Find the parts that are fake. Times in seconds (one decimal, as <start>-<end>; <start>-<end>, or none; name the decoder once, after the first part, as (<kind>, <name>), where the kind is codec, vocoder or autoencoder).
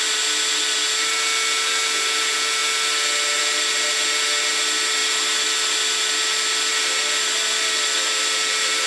none